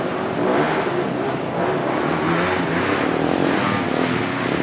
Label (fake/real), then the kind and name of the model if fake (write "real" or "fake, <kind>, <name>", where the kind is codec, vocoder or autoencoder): real